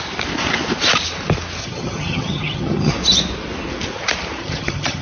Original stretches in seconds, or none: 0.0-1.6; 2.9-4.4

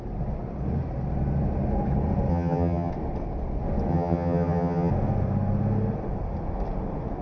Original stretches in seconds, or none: 0.0-2.3; 2.9-3.9; 4.9-7.2

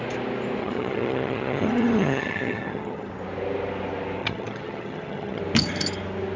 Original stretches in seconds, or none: 0.0-0.6; 3.1-4.2; 5.4-6.4

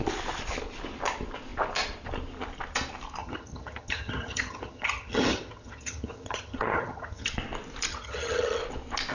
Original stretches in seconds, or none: 0.0-3.2; 7.3-7.9; 8.6-9.1